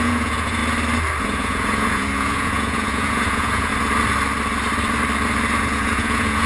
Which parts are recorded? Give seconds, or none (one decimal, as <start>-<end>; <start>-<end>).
0.6-1.2; 3.7-5.6